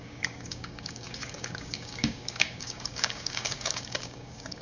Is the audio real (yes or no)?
no